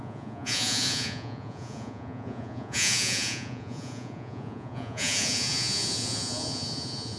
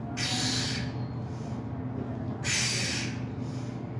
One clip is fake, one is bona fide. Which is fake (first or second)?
first